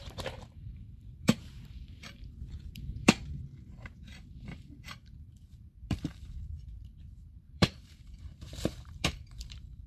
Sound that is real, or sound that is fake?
fake